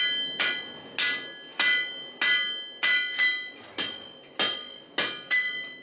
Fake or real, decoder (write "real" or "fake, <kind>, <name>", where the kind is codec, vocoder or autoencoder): real